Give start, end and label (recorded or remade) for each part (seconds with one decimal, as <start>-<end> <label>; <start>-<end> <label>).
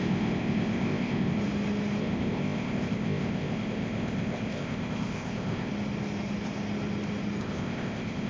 0.0-1.4 remade; 1.4-2.0 recorded; 2.0-5.7 remade; 5.7-7.4 recorded; 7.4-8.3 remade